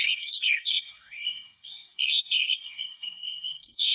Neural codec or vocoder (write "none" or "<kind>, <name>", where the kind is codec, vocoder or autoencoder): codec, SNAC